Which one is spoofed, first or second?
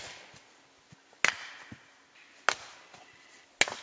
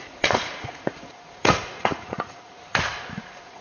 second